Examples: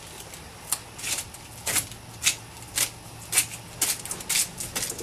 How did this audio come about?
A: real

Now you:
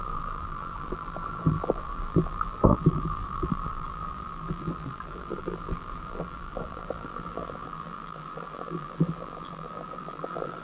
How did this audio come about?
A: fake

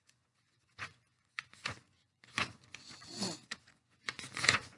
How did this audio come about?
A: fake